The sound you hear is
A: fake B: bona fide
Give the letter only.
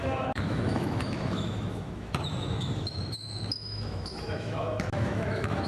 A